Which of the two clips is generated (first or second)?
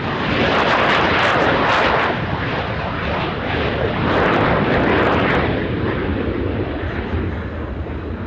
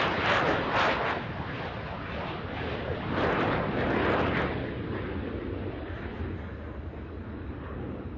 first